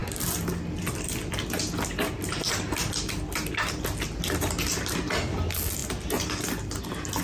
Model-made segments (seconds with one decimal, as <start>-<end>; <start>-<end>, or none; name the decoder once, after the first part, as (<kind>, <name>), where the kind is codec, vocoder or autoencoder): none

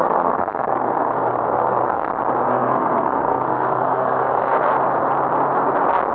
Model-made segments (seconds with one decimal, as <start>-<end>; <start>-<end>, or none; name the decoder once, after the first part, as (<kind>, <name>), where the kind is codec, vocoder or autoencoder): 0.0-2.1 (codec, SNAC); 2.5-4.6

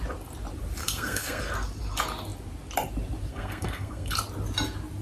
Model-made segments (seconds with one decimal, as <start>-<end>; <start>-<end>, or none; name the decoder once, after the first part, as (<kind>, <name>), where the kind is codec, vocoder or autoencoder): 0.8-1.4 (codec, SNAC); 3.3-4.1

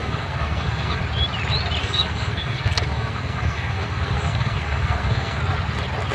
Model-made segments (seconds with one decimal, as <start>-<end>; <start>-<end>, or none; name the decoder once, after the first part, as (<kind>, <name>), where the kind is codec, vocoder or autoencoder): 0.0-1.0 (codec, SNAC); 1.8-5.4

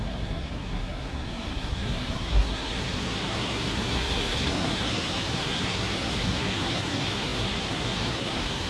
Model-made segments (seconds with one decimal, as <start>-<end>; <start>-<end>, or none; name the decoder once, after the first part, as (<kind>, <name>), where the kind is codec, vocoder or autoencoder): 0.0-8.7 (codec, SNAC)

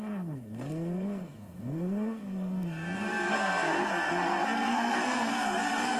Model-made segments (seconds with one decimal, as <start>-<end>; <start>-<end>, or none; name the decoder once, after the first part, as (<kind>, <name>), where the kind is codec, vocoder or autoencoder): 0.0-6.0 (codec, SNAC)

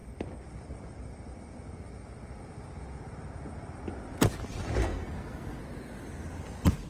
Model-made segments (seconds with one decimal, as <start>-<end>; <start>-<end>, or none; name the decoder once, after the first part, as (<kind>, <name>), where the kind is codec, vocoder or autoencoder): 4.8-5.6 (codec, SNAC)

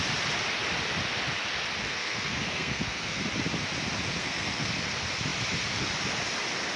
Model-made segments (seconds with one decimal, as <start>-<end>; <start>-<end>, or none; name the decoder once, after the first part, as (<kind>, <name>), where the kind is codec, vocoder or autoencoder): 1.8-3.2 (codec, SNAC); 4.2-4.7